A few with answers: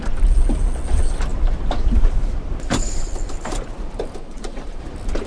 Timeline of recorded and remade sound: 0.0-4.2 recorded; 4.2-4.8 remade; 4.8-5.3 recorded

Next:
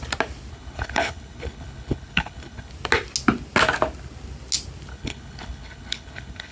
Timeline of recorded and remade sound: 0.0-0.5 recorded; 0.5-2.7 remade; 2.7-4.9 recorded; 4.9-6.5 remade

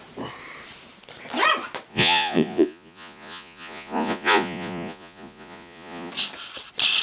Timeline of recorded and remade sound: 0.0-1.9 recorded; 1.9-6.1 remade; 6.1-7.0 recorded

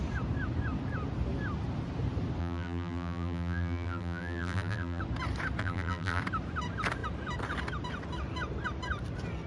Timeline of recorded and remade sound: 0.0-2.4 recorded; 2.4-5.0 remade; 5.0-5.6 recorded; 5.6-6.2 remade; 6.2-9.5 recorded

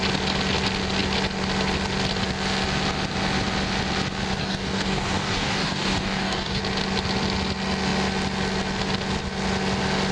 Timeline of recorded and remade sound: 0.0-4.4 recorded; 4.4-6.6 remade; 6.6-10.1 recorded

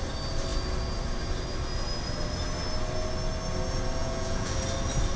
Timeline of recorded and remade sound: 0.0-4.0 recorded; 4.0-4.6 remade; 4.6-5.2 recorded

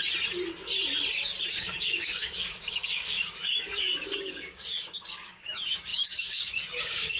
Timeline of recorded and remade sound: 0.0-1.5 recorded; 1.5-7.2 remade